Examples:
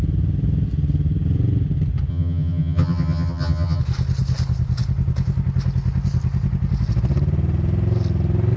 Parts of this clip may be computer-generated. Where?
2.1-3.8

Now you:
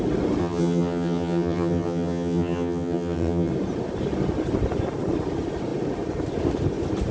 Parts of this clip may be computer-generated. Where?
0.4-3.5

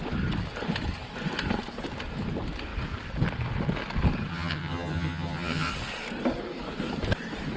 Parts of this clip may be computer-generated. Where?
4.3-5.7

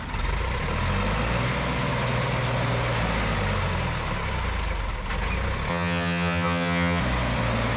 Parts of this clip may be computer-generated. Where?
5.7-7.0